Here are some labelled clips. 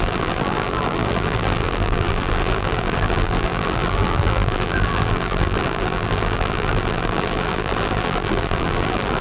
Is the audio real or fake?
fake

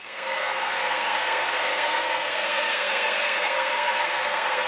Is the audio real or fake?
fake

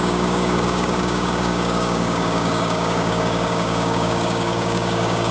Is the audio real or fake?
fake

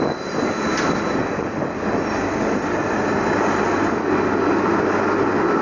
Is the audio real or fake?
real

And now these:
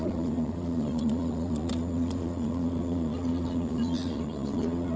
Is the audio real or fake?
fake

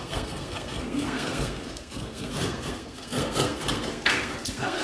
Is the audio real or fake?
fake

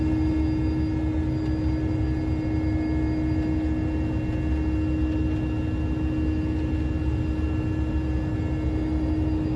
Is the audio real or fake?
real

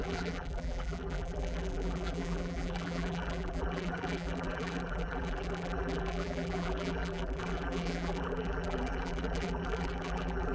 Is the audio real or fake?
fake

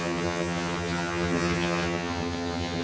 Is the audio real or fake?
fake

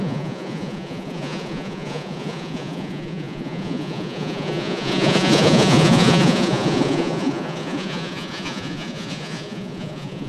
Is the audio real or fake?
fake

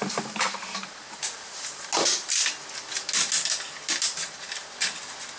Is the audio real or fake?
real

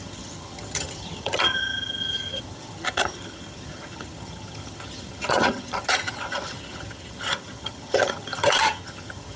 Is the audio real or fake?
fake